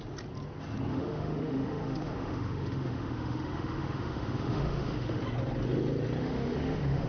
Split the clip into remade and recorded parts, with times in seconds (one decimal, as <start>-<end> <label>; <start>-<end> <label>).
0.0-0.9 recorded; 0.9-5.2 remade; 5.2-6.2 recorded; 6.2-7.1 remade